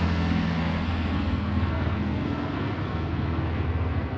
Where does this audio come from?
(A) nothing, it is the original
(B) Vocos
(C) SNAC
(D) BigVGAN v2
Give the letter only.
C